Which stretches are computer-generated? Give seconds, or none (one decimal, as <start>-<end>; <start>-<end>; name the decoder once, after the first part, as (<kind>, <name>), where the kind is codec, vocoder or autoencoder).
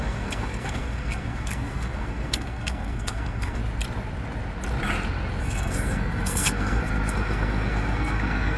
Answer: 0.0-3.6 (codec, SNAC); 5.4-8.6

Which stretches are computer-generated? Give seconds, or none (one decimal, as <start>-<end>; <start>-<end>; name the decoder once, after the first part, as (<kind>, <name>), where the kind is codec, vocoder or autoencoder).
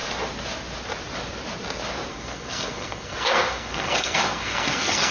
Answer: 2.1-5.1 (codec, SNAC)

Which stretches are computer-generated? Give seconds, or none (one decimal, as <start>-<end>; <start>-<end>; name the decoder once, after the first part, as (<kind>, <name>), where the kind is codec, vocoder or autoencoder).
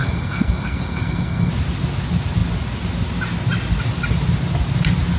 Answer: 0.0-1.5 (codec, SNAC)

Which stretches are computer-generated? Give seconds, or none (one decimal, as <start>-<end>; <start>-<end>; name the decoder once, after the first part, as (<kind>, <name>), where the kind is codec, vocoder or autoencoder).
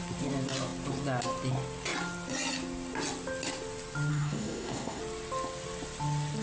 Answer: 4.1-5.0 (codec, SNAC)